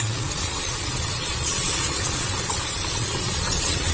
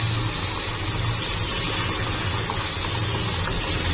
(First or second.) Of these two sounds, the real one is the second